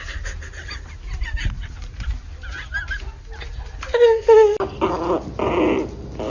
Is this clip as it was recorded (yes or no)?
yes